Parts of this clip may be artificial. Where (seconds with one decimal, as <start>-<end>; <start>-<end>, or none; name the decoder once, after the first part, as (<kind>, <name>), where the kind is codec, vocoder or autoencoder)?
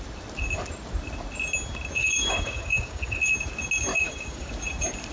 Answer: 2.0-3.2 (codec, DAC); 3.9-4.5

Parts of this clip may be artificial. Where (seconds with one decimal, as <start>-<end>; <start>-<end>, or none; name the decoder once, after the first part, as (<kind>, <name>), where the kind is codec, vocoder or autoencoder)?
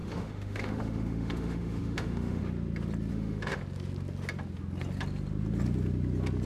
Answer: 0.0-2.4 (autoencoder, DAC-VAE); 3.1-3.6